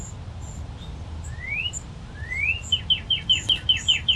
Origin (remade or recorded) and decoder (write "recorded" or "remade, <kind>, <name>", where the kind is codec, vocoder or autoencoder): recorded